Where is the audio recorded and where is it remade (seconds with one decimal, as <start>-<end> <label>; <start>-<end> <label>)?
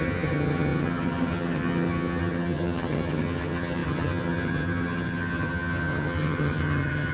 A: 0.0-7.1 remade